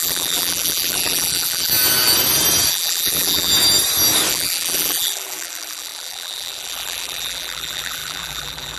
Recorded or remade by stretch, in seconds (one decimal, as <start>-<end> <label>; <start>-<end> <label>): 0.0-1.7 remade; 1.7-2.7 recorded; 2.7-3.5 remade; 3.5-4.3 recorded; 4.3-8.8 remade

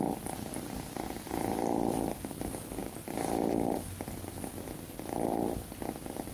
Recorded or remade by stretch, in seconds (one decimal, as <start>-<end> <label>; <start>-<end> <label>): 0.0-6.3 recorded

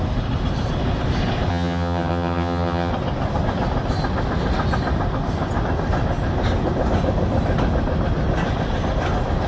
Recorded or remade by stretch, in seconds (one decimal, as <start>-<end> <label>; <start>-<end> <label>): 0.0-1.5 recorded; 1.5-2.9 remade; 2.9-9.5 recorded

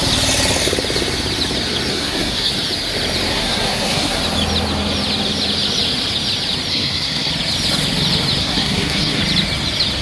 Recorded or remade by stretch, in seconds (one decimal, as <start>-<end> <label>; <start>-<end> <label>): 0.0-1.9 recorded; 1.9-2.5 remade; 2.5-3.3 recorded; 3.3-4.2 remade; 4.2-6.7 recorded; 6.7-7.3 remade; 7.3-8.4 recorded; 8.4-9.2 remade; 9.2-10.0 recorded